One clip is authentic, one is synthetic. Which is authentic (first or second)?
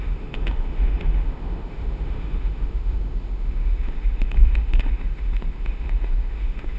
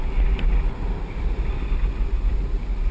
second